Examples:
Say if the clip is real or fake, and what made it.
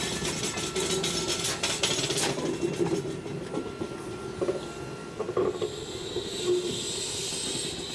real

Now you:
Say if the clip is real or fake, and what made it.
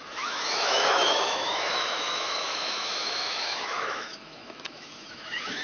fake, autoencoder, DAC-VAE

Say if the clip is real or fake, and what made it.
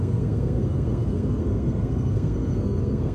fake, codec, SNAC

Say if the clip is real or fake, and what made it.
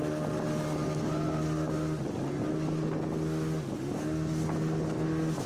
real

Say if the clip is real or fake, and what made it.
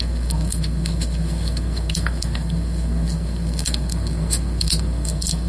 fake, codec, SNAC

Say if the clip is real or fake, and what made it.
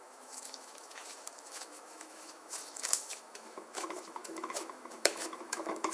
fake, autoencoder, DAC-VAE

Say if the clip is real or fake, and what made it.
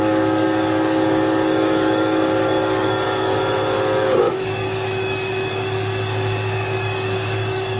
fake, codec, DAC